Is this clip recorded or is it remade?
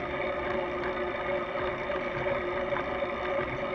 recorded